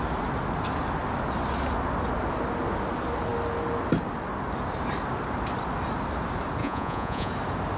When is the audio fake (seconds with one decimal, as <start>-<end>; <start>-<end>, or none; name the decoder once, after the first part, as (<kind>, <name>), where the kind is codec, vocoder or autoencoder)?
6.6-7.3 (vocoder, Vocos)